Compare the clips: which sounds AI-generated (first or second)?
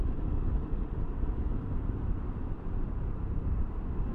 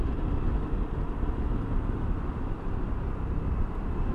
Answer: first